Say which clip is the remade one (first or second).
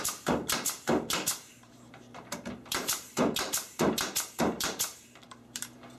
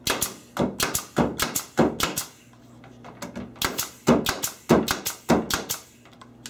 first